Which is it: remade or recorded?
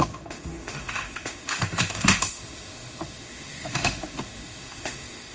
remade